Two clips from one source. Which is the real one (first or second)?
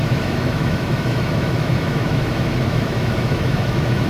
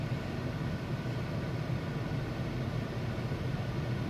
second